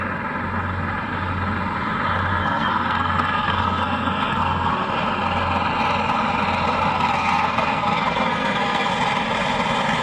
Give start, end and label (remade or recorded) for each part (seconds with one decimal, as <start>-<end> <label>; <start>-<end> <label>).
0.0-2.3 recorded; 2.3-4.7 remade; 4.7-6.9 recorded; 6.9-8.9 remade; 8.9-10.0 recorded